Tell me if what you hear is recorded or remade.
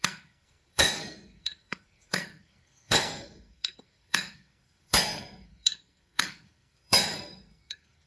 remade